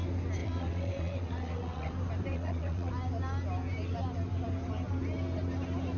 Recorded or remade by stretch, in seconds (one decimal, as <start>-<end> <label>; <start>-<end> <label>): 0.0-0.4 recorded; 0.4-1.9 remade; 1.9-2.3 recorded; 2.3-2.9 remade; 2.9-6.0 recorded